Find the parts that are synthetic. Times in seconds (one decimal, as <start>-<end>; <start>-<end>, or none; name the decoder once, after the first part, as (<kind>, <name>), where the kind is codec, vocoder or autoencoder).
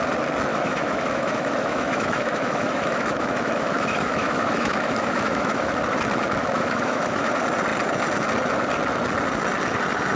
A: 0.5-5.7 (autoencoder, DAC-VAE); 6.4-7.3